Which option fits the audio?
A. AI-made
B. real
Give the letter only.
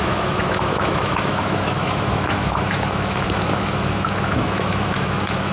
A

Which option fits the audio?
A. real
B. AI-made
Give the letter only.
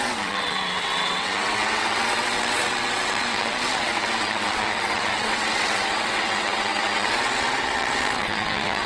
B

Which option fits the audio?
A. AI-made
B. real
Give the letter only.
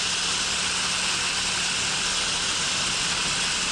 B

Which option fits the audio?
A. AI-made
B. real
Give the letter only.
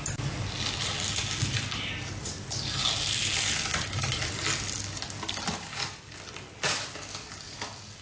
B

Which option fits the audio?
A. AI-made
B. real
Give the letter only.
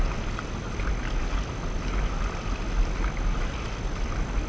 B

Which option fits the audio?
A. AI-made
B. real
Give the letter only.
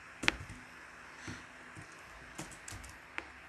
B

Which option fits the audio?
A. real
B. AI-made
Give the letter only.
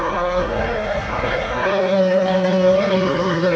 B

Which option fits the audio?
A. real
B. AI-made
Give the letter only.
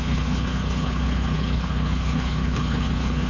B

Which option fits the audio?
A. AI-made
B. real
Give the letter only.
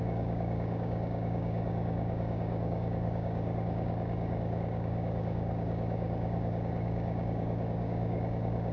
A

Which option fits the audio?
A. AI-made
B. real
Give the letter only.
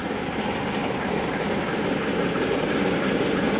B